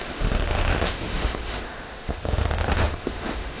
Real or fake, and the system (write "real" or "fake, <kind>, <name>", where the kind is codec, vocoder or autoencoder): fake, autoencoder, DAC-VAE